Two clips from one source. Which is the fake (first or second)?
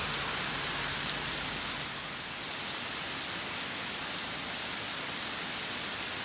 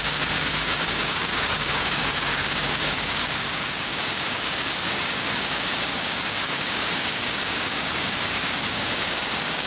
second